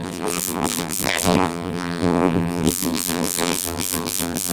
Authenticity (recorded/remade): remade